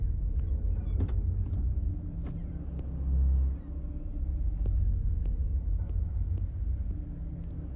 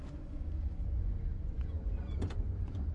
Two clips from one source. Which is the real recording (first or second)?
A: first